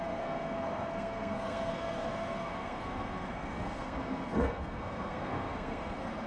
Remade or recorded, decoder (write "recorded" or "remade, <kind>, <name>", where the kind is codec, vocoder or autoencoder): remade, codec, SNAC